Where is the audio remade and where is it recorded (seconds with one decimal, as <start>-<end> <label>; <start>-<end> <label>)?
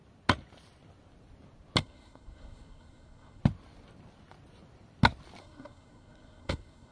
0.0-1.8 recorded; 1.8-3.4 remade; 3.4-5.4 recorded; 5.4-6.9 remade